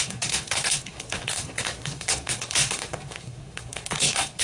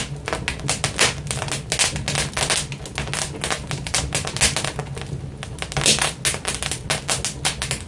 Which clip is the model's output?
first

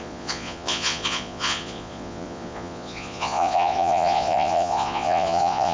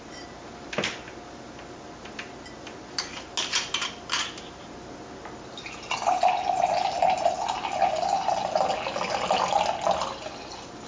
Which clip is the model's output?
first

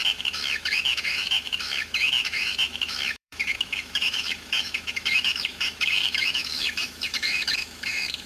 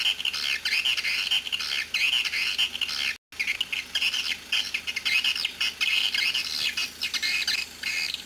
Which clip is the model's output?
first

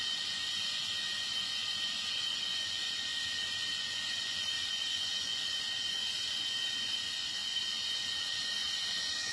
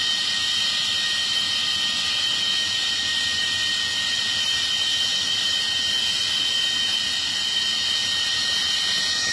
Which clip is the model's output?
first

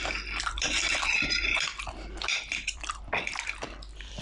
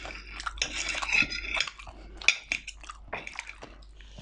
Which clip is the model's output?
first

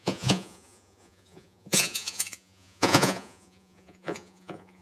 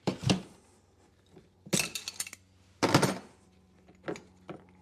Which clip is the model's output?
first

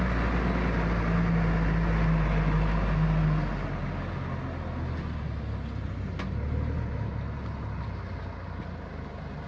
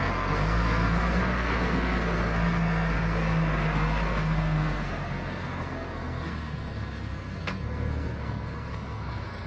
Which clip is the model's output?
second